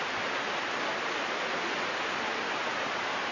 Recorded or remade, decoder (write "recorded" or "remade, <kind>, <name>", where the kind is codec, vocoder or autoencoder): recorded